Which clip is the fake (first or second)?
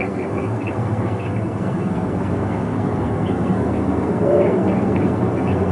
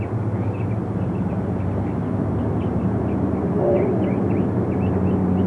first